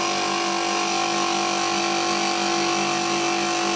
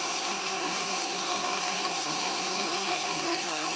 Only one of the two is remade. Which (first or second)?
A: second